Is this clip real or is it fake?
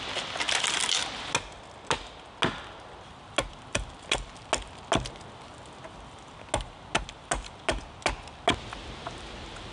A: real